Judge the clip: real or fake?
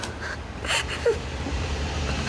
fake